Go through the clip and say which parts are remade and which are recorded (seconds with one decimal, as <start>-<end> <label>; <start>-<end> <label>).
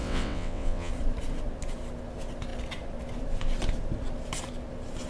0.0-0.9 remade; 0.9-5.1 recorded